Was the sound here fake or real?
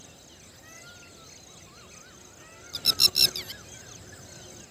real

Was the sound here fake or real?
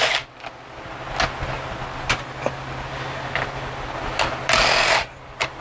real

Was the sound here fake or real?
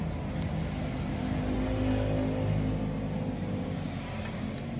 real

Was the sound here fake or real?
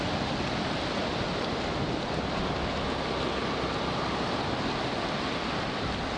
real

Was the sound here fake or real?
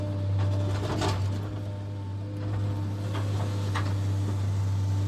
real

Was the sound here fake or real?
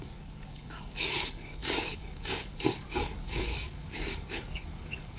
fake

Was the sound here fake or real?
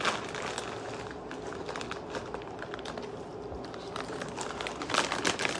real